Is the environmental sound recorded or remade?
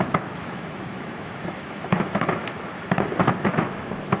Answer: remade